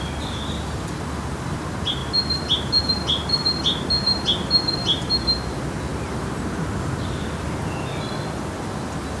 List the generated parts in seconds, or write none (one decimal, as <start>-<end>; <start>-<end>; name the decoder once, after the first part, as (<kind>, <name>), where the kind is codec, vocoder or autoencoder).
none